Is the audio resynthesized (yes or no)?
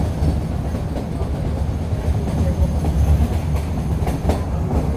no